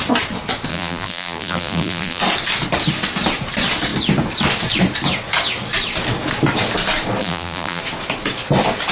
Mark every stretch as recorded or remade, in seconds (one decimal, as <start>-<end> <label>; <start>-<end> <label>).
0.0-0.7 recorded; 0.7-2.2 remade; 2.2-7.2 recorded; 7.2-7.8 remade; 7.8-8.9 recorded